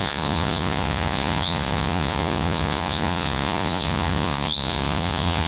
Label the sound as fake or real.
fake